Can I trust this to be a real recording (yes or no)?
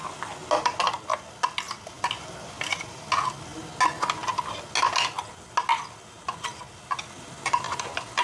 yes